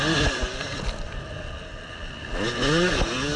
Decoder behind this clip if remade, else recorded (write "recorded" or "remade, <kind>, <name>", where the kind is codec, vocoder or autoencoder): recorded